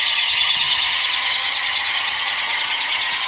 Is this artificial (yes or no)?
yes